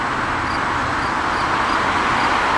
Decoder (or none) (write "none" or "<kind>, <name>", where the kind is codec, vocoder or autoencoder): none